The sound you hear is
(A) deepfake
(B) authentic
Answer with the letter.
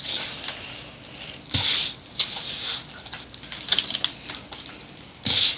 B